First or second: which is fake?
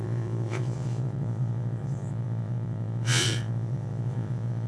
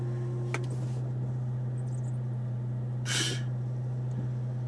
first